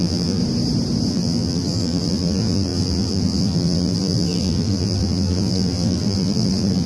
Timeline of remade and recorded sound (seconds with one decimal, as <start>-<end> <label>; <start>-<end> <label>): 0.0-0.4 remade; 0.4-1.1 recorded; 1.1-6.9 remade